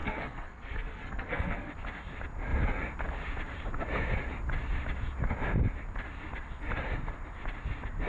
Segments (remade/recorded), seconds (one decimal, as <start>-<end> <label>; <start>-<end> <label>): 0.0-1.7 remade; 1.7-8.1 recorded

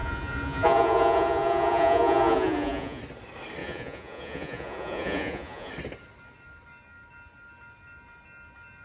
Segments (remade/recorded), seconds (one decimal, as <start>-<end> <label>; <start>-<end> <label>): 0.0-3.0 remade; 3.0-3.6 recorded; 3.6-5.7 remade; 5.7-8.8 recorded

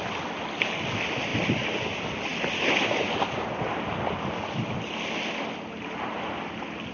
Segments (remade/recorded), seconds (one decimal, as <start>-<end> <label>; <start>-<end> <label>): 0.0-6.9 recorded

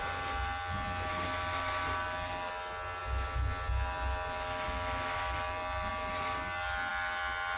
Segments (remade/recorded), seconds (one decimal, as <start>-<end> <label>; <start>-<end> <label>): 0.0-7.6 recorded

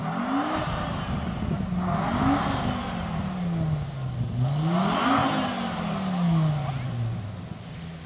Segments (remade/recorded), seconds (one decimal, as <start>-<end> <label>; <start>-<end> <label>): 0.0-8.1 recorded

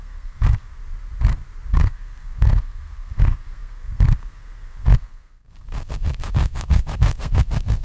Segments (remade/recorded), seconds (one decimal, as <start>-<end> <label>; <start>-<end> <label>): 0.0-0.8 remade; 0.8-1.7 recorded; 1.7-7.8 remade